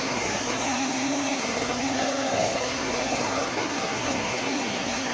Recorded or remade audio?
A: remade